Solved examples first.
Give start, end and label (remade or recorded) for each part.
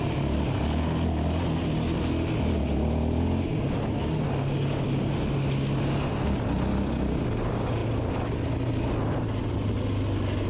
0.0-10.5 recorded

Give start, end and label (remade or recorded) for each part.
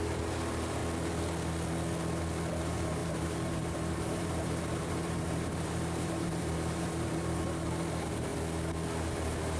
0.0-0.8 remade; 0.8-2.6 recorded; 2.6-8.3 remade; 8.3-9.0 recorded; 9.0-9.6 remade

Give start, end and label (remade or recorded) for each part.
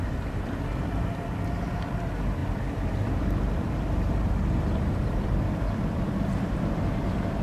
0.0-2.4 remade; 2.4-3.1 recorded; 3.1-7.4 remade